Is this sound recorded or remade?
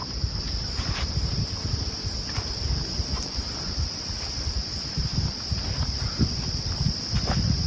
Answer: recorded